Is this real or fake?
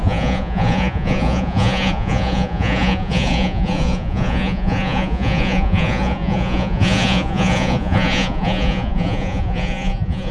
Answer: fake